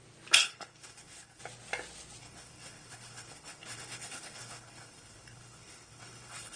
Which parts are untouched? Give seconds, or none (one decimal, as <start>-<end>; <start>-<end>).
0.0-0.4; 1.4-2.2